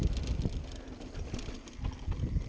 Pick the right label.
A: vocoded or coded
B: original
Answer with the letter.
B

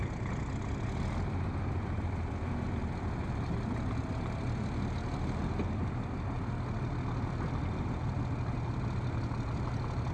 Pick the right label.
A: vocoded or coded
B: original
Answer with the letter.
B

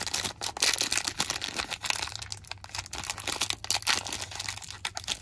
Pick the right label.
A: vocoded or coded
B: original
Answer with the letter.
B